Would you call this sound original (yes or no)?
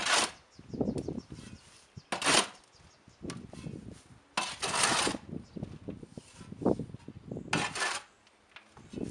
yes